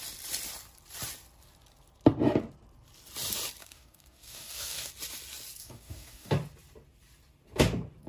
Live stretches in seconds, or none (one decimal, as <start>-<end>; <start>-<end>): 0.0-3.6; 4.9-5.6; 6.3-8.1